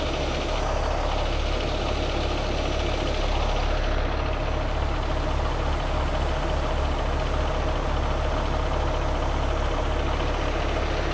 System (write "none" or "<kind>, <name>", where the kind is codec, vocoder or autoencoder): none